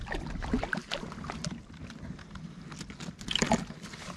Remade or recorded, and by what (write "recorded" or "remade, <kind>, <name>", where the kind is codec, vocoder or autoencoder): recorded